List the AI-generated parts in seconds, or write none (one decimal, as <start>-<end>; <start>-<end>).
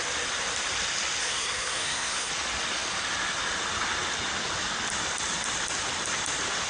1.2-2.3